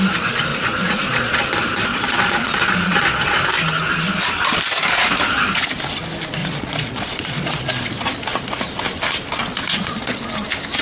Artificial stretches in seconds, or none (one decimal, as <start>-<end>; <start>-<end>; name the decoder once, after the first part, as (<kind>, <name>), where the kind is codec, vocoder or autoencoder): 0.5-1.5 (vocoder, Vocos); 1.9-3.4; 6.4-7.6; 9.5-10.2